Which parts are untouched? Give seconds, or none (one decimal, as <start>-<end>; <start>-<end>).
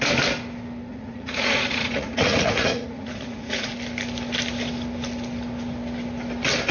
0.0-0.9; 3.7-6.7